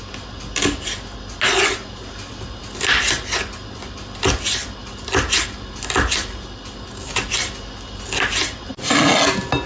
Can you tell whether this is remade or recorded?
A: recorded